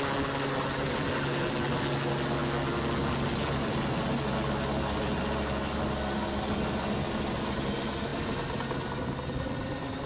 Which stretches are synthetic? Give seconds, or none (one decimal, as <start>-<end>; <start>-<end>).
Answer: none